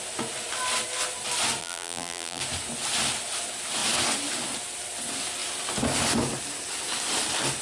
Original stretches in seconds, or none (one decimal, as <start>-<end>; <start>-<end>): 0.0-1.6; 2.4-7.6